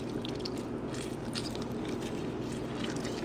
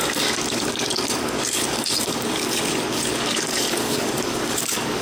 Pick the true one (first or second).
first